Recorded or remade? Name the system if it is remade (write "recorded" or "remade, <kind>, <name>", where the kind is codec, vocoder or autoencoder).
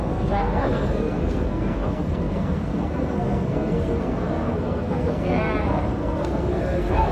remade, codec, SNAC